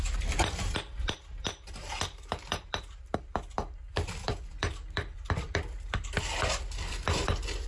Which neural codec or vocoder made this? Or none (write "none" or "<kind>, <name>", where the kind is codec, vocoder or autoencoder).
vocoder, BigVGAN v2